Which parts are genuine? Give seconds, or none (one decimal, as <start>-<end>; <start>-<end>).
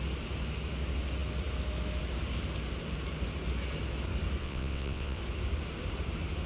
0.0-4.4; 5.2-6.5